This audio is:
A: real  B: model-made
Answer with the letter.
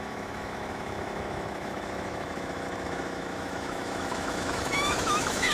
B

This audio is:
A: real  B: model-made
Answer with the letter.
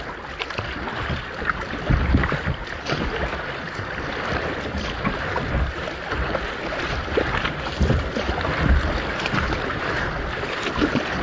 B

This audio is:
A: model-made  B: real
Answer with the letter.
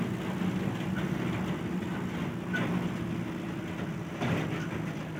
B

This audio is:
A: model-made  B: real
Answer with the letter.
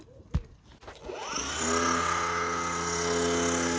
B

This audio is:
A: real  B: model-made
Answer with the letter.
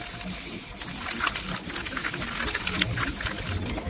A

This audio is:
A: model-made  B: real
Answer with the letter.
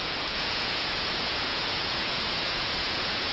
A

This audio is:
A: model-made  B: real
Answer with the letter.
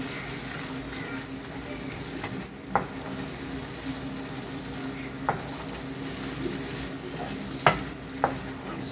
B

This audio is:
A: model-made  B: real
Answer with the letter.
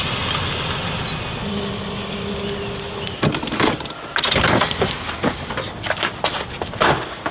B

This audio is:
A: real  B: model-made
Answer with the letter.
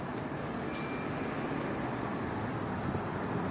A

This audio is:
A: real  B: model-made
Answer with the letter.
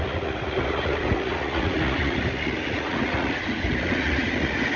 B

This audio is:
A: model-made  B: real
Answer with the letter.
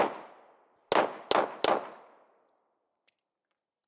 B